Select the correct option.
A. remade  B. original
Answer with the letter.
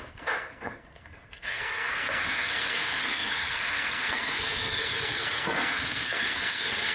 A